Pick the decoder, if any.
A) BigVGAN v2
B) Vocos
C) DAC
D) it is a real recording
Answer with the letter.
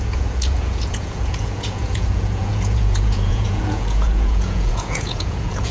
B